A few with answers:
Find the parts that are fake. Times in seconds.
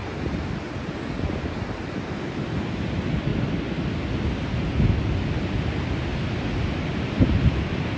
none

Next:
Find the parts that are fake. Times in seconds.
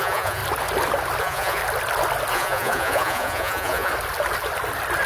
0.0-0.4 (vocoder, Vocos); 1.2-1.6; 2.3-3.9